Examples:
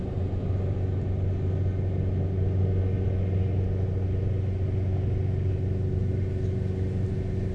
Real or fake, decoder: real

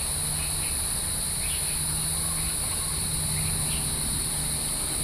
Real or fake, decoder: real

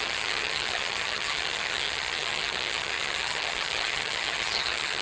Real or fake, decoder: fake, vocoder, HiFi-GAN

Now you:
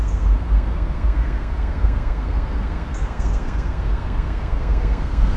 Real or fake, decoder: fake, codec, SNAC